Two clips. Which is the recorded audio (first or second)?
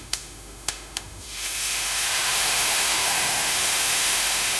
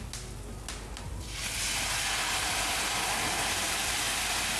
second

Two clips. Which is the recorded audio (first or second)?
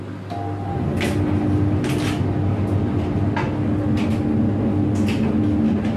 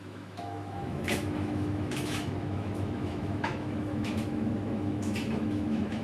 first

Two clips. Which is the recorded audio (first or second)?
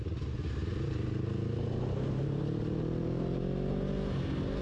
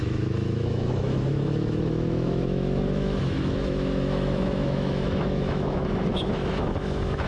first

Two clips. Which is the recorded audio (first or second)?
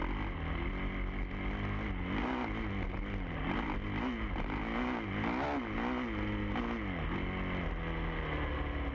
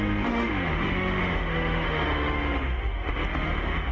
first